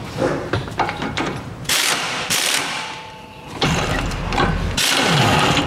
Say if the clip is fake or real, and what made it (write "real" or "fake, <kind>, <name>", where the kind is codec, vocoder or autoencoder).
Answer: fake, vocoder, BigVGAN v2